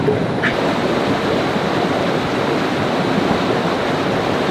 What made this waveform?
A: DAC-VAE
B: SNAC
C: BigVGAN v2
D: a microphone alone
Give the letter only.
D